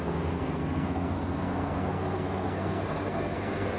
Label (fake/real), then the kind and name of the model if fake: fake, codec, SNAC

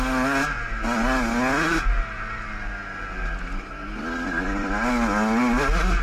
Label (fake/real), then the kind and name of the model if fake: real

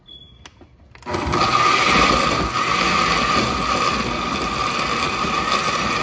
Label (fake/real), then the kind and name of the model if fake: real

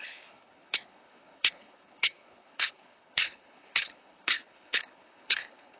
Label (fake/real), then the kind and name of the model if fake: fake, codec, HILCodec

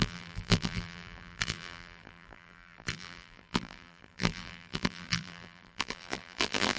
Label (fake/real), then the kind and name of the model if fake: fake, vocoder, BigVGAN v2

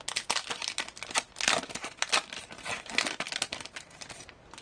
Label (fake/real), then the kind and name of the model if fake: real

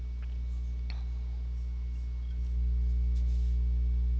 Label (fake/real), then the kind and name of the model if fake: real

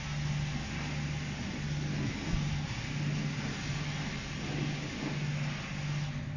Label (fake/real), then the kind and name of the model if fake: real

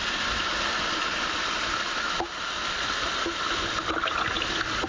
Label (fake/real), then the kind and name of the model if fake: real